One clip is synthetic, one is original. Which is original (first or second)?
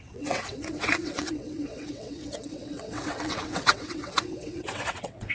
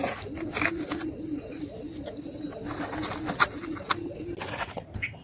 second